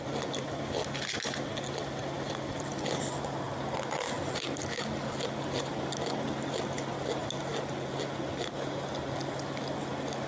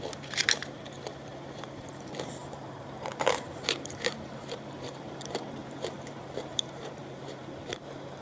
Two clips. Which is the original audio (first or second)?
first